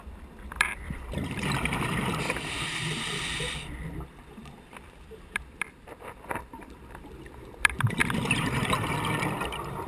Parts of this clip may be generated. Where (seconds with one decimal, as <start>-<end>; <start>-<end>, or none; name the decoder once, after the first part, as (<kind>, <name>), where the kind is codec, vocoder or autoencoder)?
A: 0.0-8.0 (vocoder, BigVGAN v2); 8.9-9.9